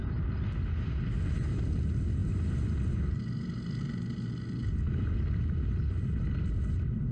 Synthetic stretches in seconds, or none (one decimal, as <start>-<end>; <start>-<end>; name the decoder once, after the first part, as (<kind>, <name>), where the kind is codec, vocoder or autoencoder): none